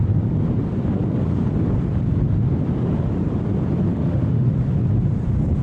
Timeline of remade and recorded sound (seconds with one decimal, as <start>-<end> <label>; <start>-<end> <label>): 0.0-3.9 recorded; 3.9-4.5 remade; 4.5-5.6 recorded